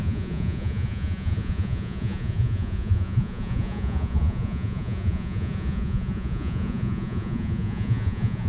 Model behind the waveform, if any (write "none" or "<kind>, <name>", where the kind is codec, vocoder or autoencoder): vocoder, Vocos